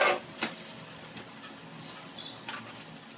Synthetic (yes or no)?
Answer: no